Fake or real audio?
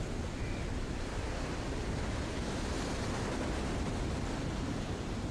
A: real